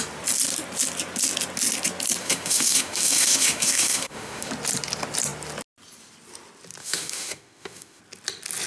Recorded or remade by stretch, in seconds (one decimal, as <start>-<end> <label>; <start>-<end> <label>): 0.0-2.2 recorded; 2.2-4.5 remade; 4.5-6.8 recorded; 6.8-8.0 remade; 8.0-8.7 recorded